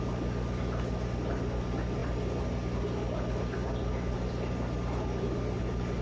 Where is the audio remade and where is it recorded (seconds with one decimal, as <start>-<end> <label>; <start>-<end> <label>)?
0.0-6.0 recorded